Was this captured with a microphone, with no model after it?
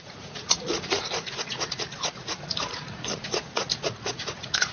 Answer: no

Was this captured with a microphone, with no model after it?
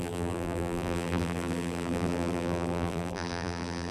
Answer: no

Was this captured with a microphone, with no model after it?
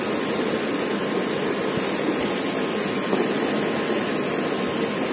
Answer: yes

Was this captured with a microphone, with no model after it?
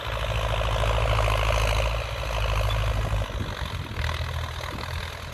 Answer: yes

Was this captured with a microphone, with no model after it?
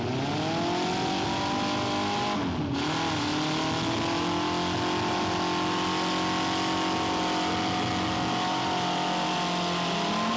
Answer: yes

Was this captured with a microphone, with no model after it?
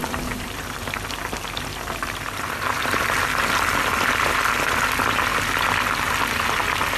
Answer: yes